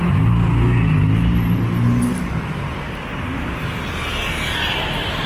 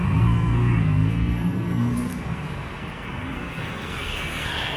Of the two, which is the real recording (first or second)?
first